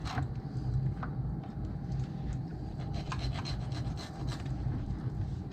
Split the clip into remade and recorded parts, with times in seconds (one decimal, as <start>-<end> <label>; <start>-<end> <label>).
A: 0.0-5.5 recorded